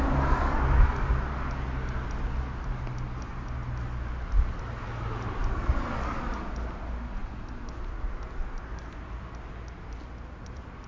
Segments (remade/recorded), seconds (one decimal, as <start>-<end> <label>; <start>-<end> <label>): 0.0-10.9 recorded